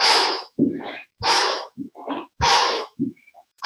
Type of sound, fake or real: fake